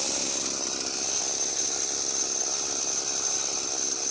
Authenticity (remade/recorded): recorded